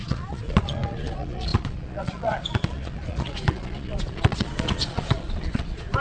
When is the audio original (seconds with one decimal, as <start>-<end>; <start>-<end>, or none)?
none